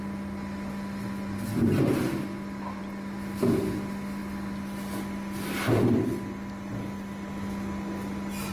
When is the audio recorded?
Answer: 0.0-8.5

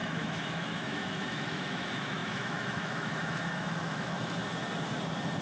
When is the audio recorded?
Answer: 4.4-5.4

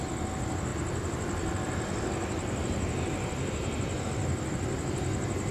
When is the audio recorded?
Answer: 0.0-5.5

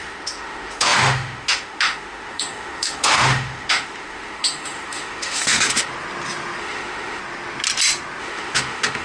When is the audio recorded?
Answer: 5.9-6.6; 7.2-8.2